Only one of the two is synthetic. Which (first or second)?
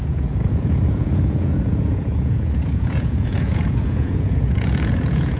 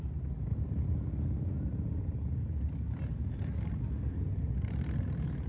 first